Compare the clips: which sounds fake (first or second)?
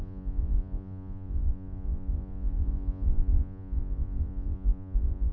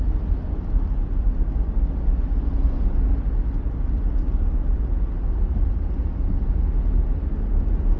first